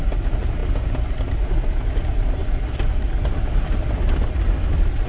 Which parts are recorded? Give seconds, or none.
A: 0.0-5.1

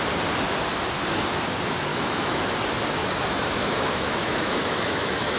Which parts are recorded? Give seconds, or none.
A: 0.0-1.9; 2.4-3.0

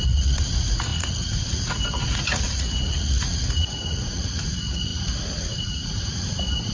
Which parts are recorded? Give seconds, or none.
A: none

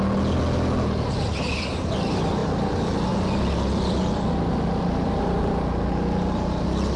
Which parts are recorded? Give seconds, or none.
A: 0.0-7.0

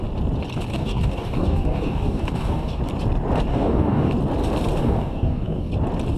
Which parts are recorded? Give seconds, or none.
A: 0.0-0.7; 2.8-3.5; 4.1-4.8; 5.7-6.2